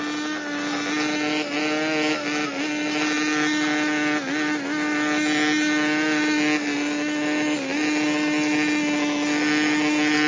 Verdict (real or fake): real